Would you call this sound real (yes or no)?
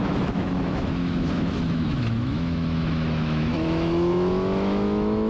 no